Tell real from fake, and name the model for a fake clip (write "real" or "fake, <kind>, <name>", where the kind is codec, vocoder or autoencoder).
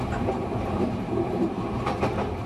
fake, vocoder, BigVGAN v2